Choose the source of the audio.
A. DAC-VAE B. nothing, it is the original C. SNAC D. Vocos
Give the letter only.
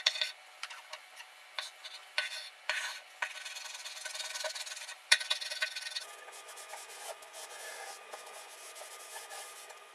D